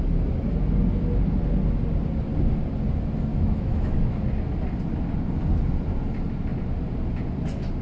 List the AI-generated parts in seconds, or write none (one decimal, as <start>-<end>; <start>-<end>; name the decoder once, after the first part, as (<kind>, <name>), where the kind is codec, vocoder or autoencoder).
3.3-4.2 (autoencoder, DAC-VAE)